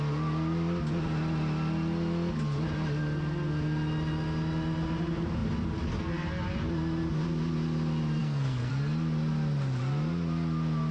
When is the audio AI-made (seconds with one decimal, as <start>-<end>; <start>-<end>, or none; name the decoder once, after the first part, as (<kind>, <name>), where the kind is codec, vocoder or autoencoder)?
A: 8.2-8.7 (codec, SNAC)